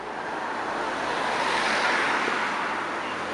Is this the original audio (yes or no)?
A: yes